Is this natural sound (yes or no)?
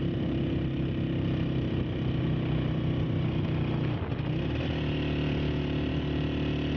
yes